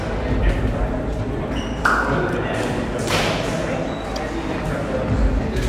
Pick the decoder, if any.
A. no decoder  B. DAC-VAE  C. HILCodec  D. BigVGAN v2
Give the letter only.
A